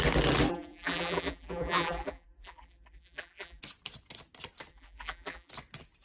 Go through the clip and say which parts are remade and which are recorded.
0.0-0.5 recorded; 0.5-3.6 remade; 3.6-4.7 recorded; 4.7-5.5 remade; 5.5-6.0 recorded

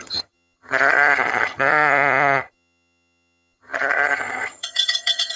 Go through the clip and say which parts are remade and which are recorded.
0.0-5.4 remade